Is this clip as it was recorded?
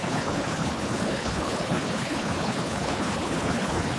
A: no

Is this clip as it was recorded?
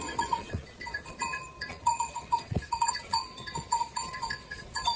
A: no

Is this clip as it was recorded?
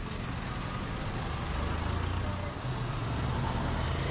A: yes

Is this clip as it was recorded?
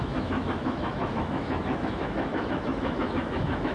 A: no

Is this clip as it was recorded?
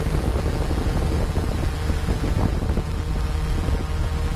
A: yes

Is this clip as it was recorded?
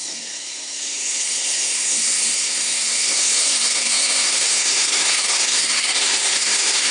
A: no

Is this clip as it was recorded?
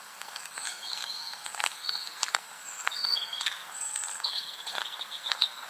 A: no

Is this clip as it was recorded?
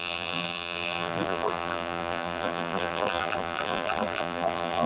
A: no